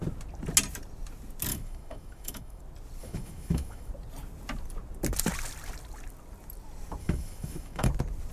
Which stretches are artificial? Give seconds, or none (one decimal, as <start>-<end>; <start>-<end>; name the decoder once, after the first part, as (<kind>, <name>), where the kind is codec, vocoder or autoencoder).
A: 1.5-2.6 (autoencoder, DAC-VAE); 3.0-3.9; 7.0-7.9

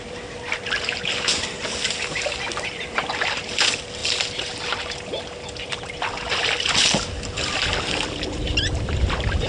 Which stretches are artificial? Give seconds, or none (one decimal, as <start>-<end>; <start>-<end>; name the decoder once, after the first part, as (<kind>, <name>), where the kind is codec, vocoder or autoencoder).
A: none

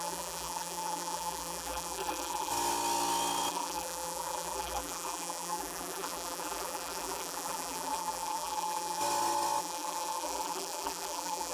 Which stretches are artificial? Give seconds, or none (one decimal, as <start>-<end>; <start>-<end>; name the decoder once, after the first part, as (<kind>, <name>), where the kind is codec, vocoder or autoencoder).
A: 0.0-2.5 (vocoder, BigVGAN v2); 3.5-9.0; 9.6-11.5

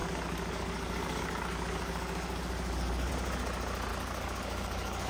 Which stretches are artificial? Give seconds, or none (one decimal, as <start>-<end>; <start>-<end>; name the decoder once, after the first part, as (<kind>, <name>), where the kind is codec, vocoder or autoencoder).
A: 0.0-3.1 (codec, DAC); 3.9-5.1

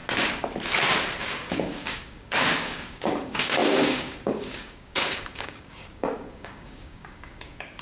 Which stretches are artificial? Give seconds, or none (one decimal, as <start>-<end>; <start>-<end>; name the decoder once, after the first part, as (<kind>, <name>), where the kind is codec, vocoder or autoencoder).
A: 1.2-7.8 (codec, DAC)

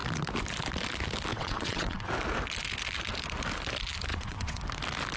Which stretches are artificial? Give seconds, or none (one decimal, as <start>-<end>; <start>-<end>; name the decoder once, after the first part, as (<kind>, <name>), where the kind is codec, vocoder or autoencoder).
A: 1.3-2.1 (vocoder, WaveNeXt); 4.1-4.6